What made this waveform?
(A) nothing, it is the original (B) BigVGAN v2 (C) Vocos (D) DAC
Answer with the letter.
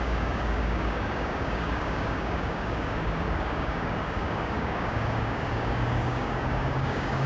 D